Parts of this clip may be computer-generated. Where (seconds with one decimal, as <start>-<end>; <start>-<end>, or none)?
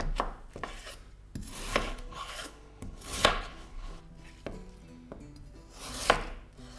1.7-4.0